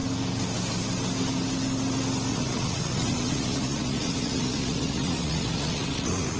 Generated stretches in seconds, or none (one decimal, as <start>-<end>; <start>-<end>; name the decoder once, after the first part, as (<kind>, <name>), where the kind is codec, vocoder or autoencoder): 2.3-6.4 (vocoder, Vocos)